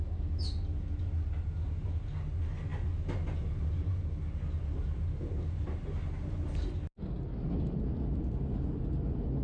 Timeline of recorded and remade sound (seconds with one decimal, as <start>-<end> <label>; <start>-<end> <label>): 0.0-9.4 recorded